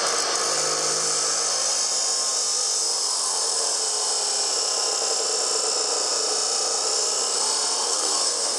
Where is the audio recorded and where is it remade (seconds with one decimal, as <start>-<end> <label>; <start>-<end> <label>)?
0.0-7.9 recorded; 7.9-8.6 remade